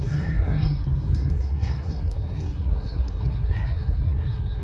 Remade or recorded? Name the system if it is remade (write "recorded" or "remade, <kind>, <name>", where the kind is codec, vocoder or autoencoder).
remade, codec, SNAC